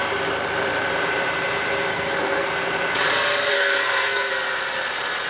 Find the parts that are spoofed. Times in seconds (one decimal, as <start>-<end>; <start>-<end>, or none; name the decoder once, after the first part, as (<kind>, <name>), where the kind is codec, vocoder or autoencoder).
1.9-2.5 (codec, SNAC); 3.5-4.3